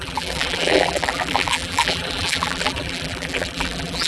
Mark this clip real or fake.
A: fake